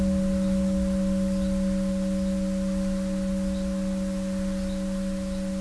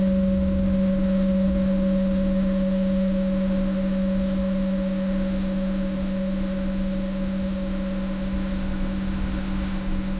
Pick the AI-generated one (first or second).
second